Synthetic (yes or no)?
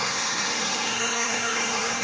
yes